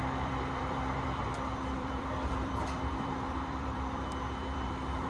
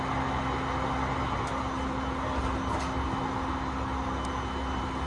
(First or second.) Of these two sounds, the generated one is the first